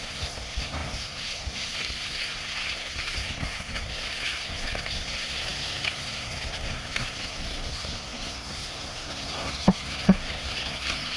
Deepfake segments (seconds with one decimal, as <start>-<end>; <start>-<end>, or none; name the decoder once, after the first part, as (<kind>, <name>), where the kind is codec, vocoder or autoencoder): 0.0-11.2 (codec, SNAC)